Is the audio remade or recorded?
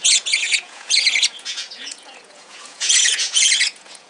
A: remade